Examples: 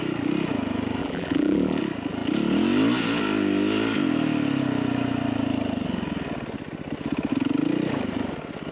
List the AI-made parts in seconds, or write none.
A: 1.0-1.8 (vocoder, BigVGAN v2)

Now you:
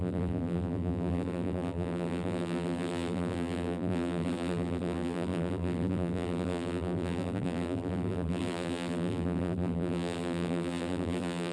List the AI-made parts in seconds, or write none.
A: 0.0-11.5 (vocoder, BigVGAN v2)

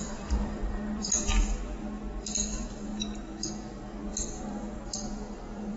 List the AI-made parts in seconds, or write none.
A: 0.0-1.2 (vocoder, BigVGAN v2); 4.1-5.8

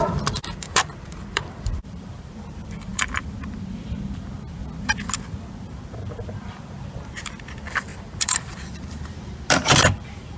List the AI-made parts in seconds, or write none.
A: 0.0-4.6 (vocoder, BigVGAN v2); 5.5-10.4

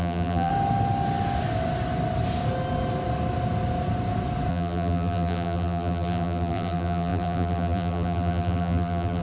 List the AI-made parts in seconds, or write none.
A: 0.0-0.5 (vocoder, BigVGAN v2); 4.5-9.2

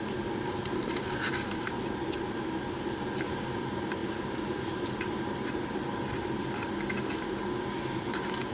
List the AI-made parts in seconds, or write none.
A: 4.0-4.7 (vocoder, BigVGAN v2)